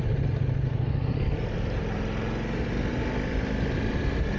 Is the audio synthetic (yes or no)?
no